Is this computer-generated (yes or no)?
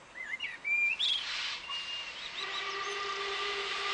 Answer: no